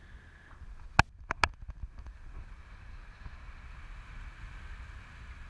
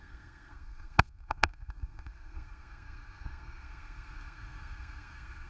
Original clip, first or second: first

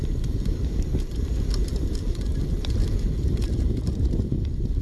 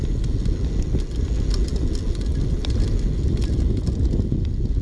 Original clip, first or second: second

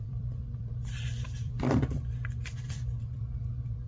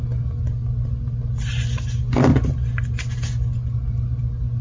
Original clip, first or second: second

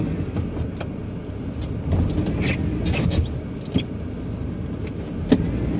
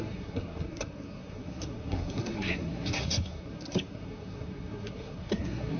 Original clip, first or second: first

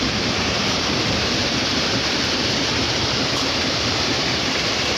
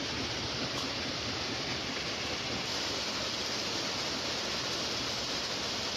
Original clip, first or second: second